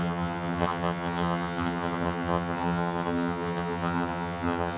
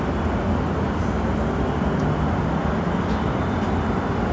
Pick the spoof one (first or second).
first